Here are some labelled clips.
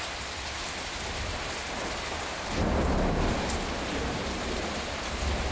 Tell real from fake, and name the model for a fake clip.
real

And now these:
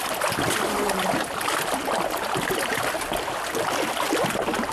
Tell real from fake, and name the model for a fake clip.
real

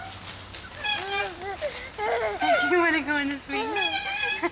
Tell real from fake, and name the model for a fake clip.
real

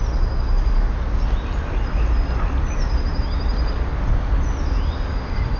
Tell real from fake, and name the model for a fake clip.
real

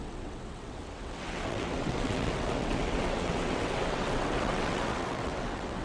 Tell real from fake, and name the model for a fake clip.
fake, vocoder, WaveNeXt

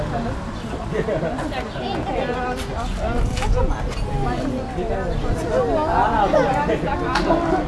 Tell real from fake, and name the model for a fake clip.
real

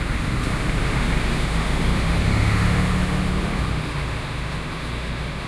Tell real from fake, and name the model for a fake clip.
fake, autoencoder, DAC-VAE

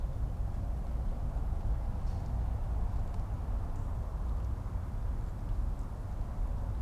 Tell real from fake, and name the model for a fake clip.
real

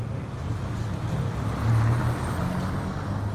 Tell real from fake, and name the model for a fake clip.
real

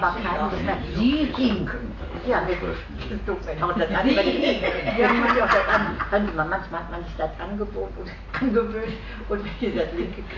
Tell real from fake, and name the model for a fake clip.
real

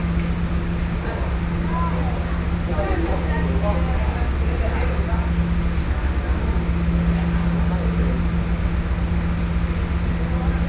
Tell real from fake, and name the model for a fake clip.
real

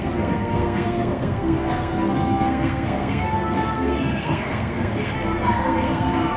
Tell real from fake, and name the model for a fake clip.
fake, codec, SNAC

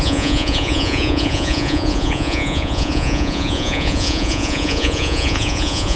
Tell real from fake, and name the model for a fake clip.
fake, vocoder, Vocos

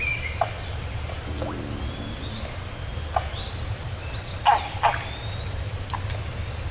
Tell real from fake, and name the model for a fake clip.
real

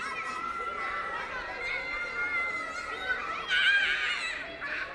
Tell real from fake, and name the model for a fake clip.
real